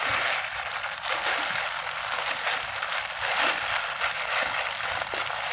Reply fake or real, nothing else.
real